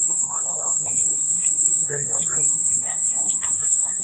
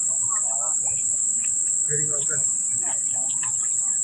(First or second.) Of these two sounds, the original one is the second